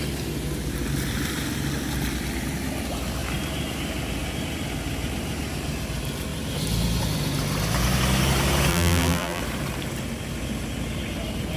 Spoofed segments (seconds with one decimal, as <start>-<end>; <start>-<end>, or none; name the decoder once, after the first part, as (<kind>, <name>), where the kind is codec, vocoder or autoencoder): 8.7-9.4 (vocoder, BigVGAN v2)

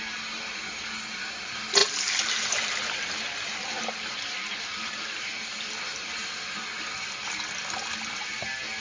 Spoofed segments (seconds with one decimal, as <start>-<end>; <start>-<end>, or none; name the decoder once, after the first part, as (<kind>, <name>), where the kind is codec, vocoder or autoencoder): 1.8-5.8 (vocoder, BigVGAN v2)

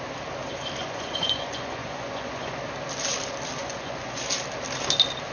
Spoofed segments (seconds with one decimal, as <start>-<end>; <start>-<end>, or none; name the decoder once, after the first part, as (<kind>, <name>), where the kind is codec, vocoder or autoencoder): 0.8-2.6 (vocoder, Vocos); 3.6-4.2

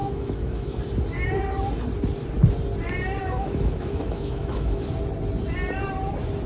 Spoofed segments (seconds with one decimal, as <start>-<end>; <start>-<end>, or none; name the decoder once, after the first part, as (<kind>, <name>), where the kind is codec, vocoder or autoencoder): 0.0-0.8 (autoencoder, DAC-VAE); 3.2-4.9

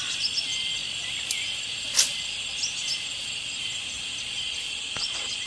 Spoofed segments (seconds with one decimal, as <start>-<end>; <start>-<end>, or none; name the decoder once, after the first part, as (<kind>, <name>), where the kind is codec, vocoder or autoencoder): 2.8-5.5 (vocoder, BigVGAN v2)

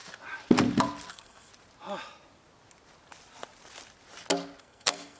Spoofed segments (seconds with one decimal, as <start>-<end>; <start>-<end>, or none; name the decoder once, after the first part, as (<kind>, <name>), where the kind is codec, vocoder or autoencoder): 1.1-1.5 (codec, SNAC); 4.6-5.2